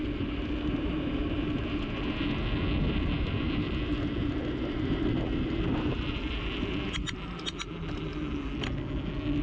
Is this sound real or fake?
real